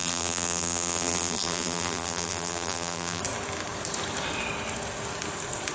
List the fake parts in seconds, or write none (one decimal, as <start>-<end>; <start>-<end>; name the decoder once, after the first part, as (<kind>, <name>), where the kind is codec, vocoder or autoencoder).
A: 0.0-3.2 (vocoder, BigVGAN v2)